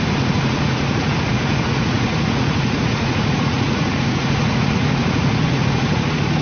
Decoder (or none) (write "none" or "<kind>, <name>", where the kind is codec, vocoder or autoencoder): vocoder, Vocos